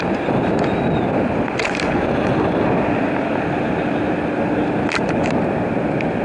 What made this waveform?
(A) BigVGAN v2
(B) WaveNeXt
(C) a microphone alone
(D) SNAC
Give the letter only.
C